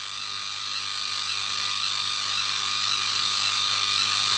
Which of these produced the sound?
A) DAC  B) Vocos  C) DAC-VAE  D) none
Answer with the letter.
A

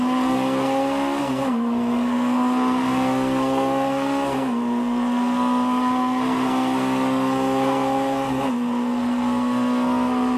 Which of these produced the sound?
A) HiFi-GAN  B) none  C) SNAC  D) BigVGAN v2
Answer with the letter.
C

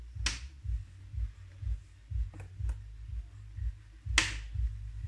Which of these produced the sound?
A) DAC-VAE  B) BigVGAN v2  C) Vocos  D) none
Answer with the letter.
D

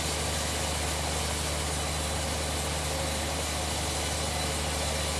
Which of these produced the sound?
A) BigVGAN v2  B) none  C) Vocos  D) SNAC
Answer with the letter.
B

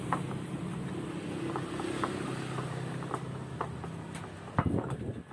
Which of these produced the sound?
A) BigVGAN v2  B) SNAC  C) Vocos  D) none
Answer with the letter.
D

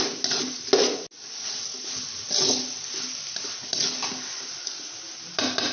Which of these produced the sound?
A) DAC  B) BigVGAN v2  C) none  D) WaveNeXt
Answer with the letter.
C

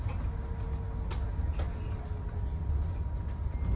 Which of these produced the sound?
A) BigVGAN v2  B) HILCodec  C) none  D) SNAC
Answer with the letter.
C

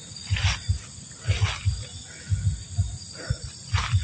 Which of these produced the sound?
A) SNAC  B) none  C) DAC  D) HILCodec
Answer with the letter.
B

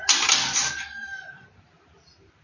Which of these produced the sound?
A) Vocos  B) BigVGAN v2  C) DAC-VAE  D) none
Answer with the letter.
B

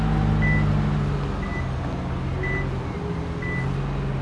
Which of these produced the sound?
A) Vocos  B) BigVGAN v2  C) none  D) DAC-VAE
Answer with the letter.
C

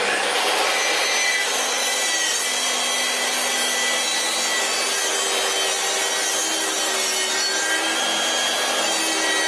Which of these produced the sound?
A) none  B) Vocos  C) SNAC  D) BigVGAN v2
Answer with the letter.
A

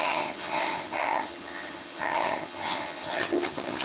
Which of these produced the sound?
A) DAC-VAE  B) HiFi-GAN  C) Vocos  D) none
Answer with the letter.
B